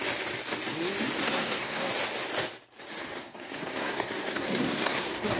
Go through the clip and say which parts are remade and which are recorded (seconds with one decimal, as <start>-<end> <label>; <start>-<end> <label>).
0.0-1.2 recorded; 1.2-1.9 remade; 1.9-3.0 recorded; 3.0-5.4 remade